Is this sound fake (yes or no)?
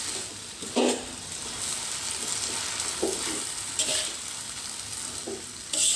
no